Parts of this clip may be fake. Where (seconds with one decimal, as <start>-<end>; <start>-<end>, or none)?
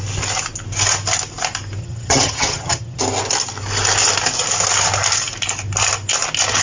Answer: 1.8-3.0